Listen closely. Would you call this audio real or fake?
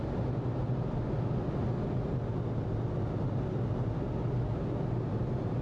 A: real